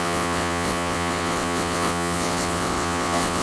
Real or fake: fake